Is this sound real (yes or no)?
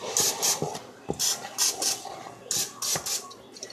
yes